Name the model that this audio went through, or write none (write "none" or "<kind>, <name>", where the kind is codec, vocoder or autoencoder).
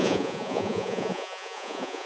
vocoder, Vocos